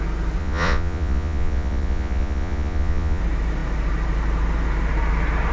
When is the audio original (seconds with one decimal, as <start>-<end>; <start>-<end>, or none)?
0.0-0.4; 3.2-5.5